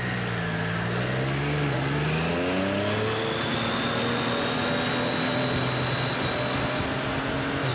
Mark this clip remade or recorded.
recorded